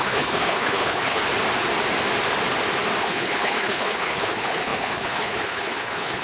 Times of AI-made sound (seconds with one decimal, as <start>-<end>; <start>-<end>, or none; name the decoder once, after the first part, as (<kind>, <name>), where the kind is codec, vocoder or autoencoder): 0.0-1.2 (codec, HILCodec); 3.0-6.2